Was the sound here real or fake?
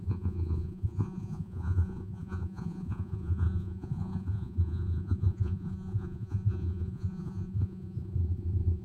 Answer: fake